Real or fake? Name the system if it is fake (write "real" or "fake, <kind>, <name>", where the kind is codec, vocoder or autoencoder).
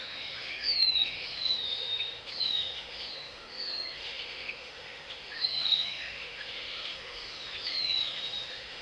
fake, autoencoder, DAC-VAE